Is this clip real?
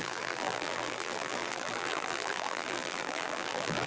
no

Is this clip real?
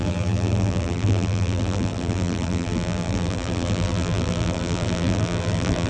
no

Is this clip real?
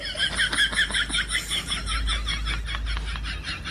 yes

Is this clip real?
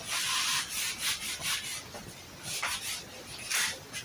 yes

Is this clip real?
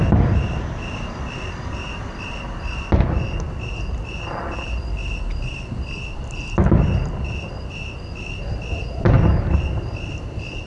yes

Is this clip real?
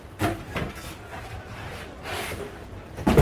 no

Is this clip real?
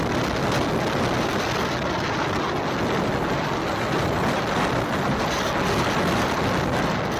yes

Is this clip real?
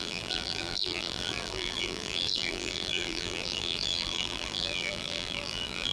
no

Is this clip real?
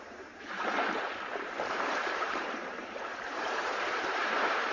no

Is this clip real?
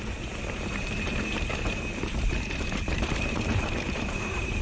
no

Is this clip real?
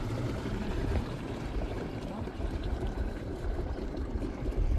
no